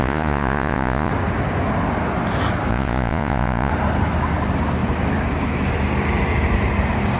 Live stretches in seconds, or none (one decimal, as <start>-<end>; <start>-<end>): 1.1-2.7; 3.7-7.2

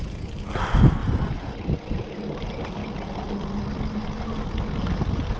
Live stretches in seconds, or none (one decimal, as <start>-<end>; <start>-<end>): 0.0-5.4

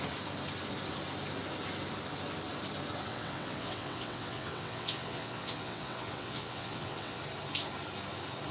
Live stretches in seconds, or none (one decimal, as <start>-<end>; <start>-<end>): 0.0-3.1; 7.2-8.5